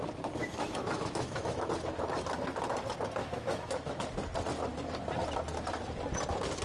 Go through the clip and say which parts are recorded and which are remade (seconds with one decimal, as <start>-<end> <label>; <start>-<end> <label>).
0.0-0.4 recorded; 0.4-1.7 remade; 1.7-3.2 recorded; 3.2-3.9 remade; 3.9-6.6 recorded